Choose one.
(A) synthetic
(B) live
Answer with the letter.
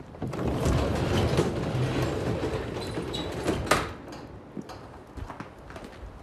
B